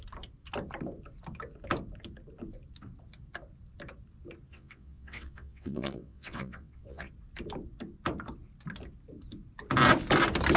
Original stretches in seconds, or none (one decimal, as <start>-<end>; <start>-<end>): 0.0-4.5; 7.1-10.6